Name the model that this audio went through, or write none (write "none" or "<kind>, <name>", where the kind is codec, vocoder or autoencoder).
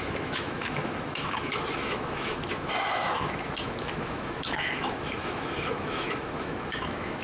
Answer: autoencoder, DAC-VAE